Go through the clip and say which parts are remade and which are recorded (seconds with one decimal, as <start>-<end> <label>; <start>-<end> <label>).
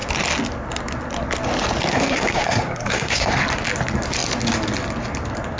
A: 0.0-1.9 recorded; 1.9-3.3 remade; 3.3-5.6 recorded